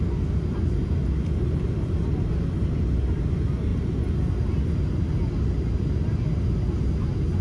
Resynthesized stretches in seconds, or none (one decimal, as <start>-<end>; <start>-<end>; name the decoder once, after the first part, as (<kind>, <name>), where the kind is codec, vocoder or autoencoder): none